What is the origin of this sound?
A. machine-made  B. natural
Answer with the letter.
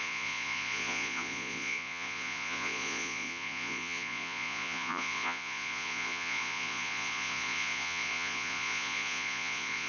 A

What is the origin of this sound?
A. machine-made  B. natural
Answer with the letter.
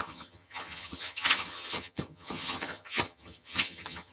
A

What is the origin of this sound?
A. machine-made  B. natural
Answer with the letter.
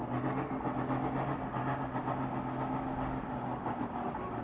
B